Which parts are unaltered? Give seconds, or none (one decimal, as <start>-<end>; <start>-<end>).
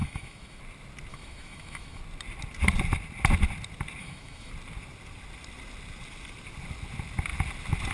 0.6-1.1; 2.0-4.0; 4.5-7.9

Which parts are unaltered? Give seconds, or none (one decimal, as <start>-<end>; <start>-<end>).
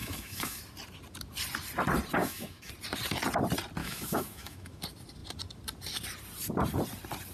0.6-2.2; 2.7-3.8; 4.8-7.3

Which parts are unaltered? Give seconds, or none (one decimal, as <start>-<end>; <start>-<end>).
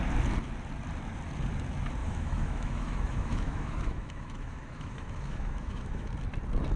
0.0-2.0; 6.1-6.8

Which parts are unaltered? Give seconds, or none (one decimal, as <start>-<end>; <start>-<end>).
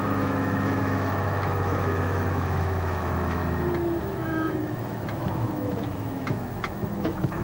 3.4-4.0